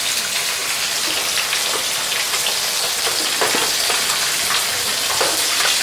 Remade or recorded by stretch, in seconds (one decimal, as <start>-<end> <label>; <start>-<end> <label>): 0.0-5.8 recorded